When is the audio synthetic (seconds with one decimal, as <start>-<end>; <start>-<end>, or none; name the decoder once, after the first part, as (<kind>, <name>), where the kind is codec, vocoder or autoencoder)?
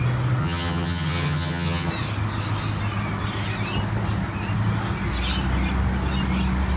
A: 0.4-1.9 (vocoder, HiFi-GAN)